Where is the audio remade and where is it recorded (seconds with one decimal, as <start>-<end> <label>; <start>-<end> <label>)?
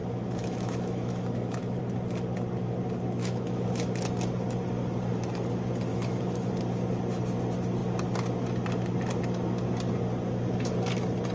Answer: 0.0-1.8 remade; 1.8-3.2 recorded; 3.2-3.9 remade; 3.9-5.9 recorded; 5.9-6.5 remade; 6.5-11.3 recorded